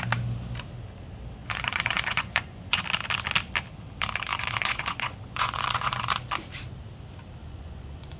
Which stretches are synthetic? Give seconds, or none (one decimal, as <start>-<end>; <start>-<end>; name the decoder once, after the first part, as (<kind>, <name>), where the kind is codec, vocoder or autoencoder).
1.4-2.8 (vocoder, Vocos); 4.3-6.0; 7.4-8.2